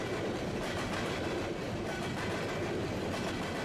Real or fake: real